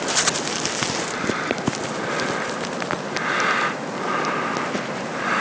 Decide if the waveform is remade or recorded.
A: recorded